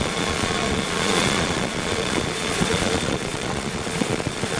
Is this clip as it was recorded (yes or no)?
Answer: no